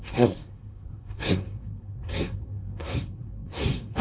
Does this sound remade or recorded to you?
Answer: remade